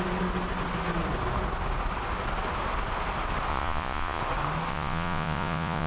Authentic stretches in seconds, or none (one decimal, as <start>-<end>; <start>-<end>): 0.0-3.5; 4.2-4.7